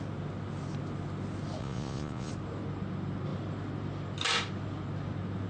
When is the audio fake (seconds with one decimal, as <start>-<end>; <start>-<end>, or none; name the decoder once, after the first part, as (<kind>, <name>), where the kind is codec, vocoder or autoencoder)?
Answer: 1.6-2.3 (vocoder, Vocos)